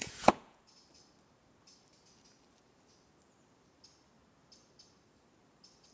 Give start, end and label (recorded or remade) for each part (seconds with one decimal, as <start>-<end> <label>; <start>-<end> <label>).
0.0-0.6 remade; 0.6-5.9 recorded